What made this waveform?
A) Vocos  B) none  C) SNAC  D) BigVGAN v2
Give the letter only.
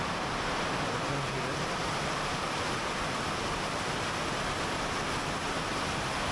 B